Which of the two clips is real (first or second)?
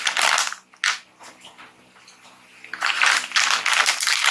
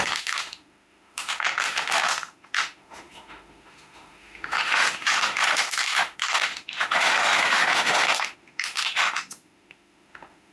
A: first